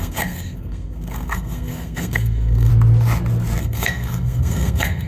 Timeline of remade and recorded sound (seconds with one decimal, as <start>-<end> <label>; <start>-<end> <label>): 0.0-2.7 remade; 2.7-3.6 recorded; 3.6-5.1 remade